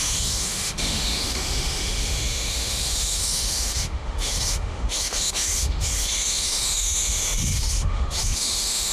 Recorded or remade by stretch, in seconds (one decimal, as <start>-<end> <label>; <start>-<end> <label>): 0.0-8.9 remade